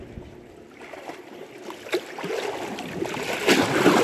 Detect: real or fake real